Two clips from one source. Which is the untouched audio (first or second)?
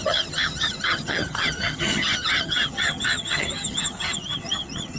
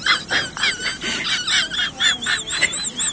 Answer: second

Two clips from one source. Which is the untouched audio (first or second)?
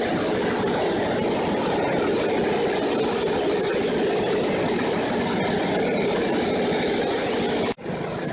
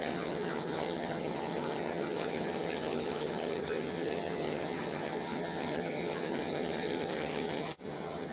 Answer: first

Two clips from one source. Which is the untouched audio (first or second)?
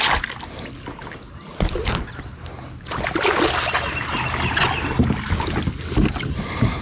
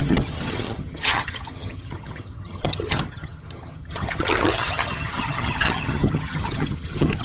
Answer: first